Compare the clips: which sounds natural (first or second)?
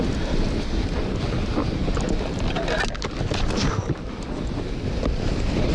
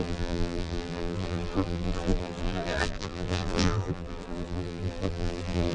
first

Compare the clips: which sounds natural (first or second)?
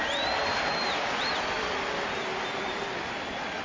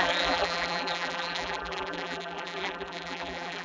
first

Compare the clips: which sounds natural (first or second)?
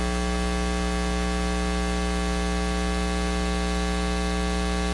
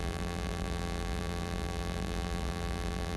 first